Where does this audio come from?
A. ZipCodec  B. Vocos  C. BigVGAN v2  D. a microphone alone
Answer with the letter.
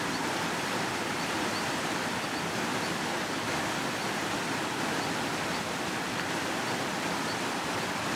C